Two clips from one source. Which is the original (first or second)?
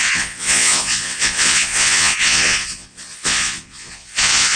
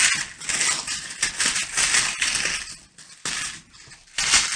second